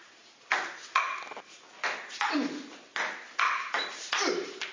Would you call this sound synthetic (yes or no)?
no